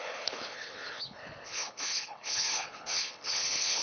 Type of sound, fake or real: fake